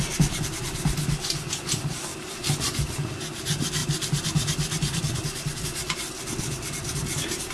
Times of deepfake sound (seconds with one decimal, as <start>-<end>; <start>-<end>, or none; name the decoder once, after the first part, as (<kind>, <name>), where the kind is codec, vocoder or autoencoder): none